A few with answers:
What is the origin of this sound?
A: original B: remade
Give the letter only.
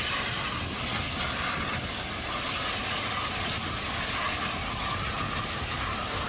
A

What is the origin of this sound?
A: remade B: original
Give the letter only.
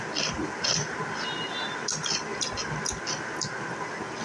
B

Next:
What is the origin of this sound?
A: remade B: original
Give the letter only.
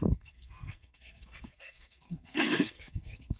A